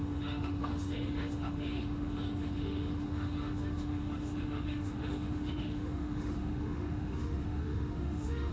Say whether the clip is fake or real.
fake